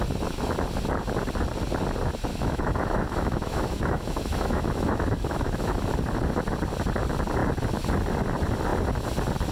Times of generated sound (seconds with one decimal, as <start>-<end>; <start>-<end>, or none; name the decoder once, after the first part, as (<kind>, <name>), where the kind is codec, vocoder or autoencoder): 2.3-5.9 (autoencoder, DAC-VAE)